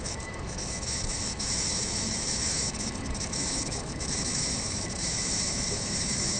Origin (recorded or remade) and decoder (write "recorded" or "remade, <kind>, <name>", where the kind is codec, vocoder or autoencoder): remade, autoencoder, DAC-VAE